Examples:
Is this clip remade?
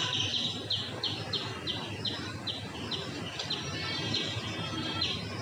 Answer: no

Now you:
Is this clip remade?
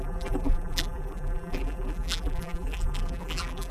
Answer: yes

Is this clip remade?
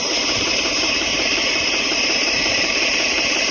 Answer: yes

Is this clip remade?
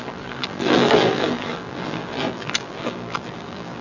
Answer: yes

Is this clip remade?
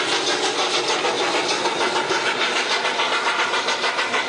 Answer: no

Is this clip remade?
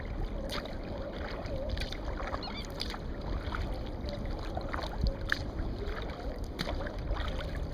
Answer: no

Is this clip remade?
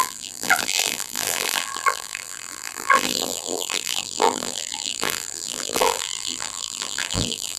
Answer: yes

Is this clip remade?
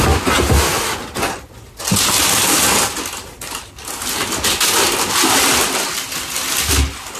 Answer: no